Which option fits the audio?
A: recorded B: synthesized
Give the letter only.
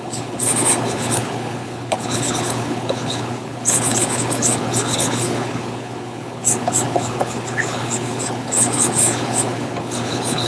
B